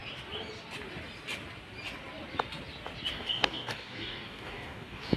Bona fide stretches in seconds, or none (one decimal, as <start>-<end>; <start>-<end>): 0.0-3.1